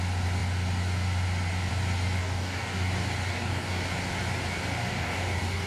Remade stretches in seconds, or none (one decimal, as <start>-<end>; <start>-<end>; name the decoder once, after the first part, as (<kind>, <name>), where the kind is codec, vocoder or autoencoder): 2.2-2.9 (codec, DAC); 3.3-3.8; 4.9-5.7